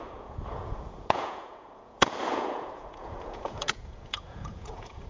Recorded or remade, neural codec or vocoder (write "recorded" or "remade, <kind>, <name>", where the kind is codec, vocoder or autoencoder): remade, vocoder, Vocos